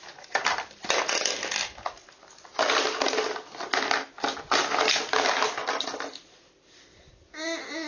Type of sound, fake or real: real